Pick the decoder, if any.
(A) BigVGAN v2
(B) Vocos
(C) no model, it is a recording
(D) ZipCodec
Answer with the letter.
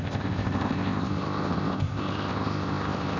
D